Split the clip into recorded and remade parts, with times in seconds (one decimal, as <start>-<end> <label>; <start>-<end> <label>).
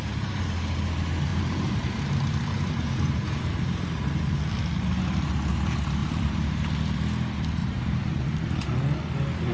0.0-1.3 recorded; 1.3-4.1 remade; 4.1-6.0 recorded; 6.0-6.7 remade; 6.7-7.6 recorded; 7.6-8.6 remade; 8.6-9.5 recorded